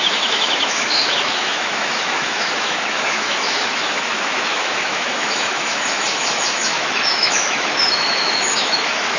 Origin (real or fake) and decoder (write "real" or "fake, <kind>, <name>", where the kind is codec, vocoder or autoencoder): fake, autoencoder, DAC-VAE